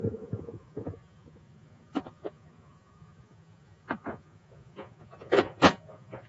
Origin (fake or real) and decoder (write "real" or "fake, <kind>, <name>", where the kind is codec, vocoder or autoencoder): fake, vocoder, Vocos